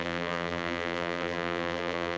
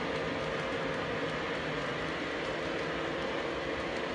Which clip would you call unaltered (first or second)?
second